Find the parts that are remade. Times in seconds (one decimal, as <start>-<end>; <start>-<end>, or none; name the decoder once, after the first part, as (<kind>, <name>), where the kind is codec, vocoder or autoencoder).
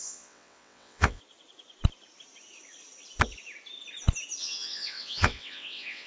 0.0-1.2 (vocoder, WaveNeXt); 4.4-6.1